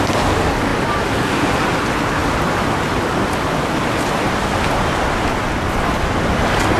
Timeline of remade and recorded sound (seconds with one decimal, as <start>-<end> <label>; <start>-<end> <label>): 0.0-6.8 recorded